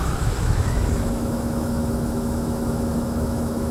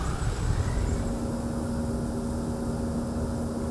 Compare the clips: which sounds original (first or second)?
second